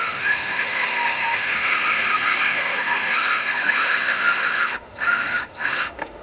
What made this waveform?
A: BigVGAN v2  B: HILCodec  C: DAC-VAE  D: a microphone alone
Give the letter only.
C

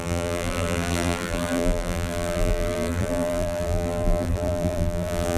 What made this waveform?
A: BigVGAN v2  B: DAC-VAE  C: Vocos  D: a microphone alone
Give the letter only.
A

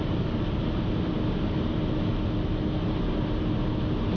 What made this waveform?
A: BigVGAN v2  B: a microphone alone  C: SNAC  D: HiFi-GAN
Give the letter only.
B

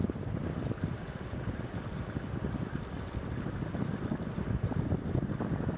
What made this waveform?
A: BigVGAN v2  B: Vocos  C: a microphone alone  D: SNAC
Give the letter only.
A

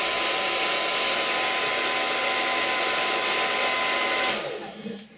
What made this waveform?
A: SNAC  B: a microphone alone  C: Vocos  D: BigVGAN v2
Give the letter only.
B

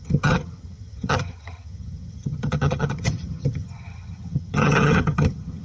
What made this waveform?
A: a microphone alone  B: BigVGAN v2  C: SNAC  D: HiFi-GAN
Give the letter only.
D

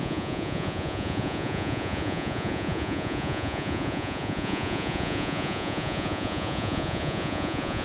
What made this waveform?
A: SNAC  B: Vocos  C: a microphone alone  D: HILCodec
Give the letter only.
B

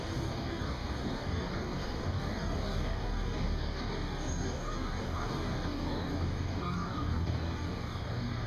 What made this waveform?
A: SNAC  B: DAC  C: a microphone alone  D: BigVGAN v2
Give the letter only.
B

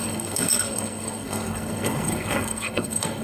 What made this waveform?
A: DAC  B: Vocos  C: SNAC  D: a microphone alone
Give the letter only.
C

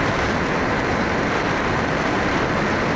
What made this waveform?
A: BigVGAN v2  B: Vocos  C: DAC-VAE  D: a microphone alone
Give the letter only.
A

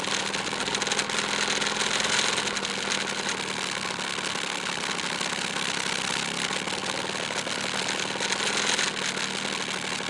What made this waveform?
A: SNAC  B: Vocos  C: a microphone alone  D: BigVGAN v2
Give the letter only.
C